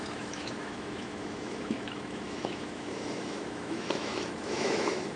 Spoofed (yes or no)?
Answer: yes